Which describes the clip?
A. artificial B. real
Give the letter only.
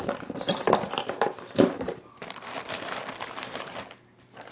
A